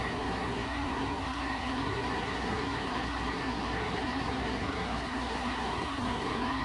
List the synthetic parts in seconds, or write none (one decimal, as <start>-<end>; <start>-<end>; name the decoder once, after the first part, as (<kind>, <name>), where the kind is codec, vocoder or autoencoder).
0.0-6.6 (codec, SNAC)